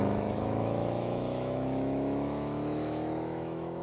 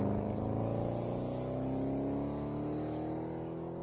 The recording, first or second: second